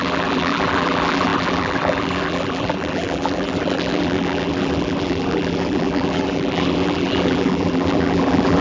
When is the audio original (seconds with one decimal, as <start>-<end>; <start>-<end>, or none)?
none

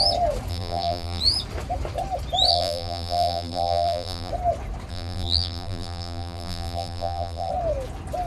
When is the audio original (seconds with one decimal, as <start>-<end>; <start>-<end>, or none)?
0.0-0.5; 1.2-2.5; 4.3-4.9; 7.5-8.3

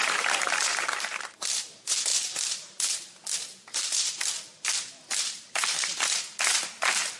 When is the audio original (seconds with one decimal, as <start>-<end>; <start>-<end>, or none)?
1.3-7.2